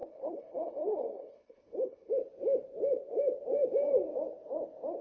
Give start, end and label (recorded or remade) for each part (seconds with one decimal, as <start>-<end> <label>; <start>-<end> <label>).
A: 0.0-2.1 remade; 2.1-5.0 recorded